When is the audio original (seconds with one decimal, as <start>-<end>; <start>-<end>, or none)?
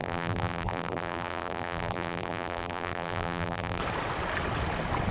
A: 3.8-5.1